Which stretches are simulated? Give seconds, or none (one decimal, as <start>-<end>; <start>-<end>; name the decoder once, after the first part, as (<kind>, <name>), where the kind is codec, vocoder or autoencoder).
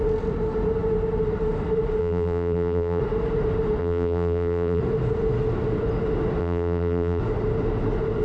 2.0-3.0 (vocoder, BigVGAN v2); 3.8-4.8; 6.4-7.2